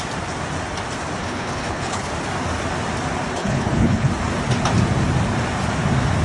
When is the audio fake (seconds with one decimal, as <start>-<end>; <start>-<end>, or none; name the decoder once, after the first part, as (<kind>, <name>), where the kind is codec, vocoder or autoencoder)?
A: 1.2-2.1 (codec, HILCodec); 3.4-4.1